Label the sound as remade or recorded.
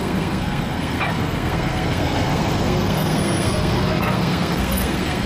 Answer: remade